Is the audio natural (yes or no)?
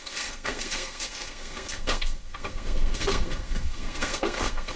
no